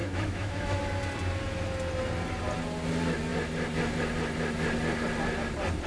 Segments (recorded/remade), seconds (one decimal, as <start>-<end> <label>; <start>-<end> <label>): 0.0-0.8 remade; 0.8-5.9 recorded